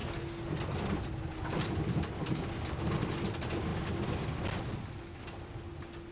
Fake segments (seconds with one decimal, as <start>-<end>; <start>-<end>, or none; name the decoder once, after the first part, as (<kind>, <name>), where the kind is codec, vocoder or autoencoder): none